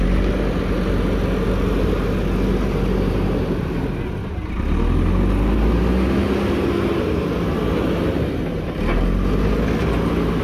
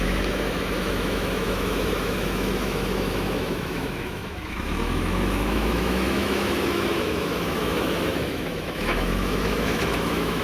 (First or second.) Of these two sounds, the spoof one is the second